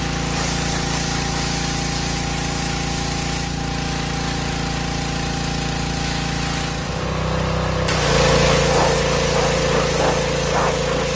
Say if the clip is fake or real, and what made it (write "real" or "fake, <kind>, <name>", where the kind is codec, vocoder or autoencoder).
real